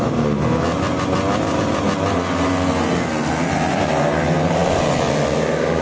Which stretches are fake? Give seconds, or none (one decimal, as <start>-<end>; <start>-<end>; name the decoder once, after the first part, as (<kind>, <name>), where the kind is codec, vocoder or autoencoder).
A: 4.6-5.1 (vocoder, BigVGAN v2)